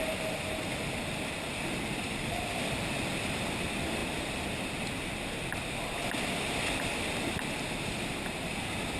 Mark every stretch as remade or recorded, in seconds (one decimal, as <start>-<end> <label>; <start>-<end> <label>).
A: 0.0-9.0 recorded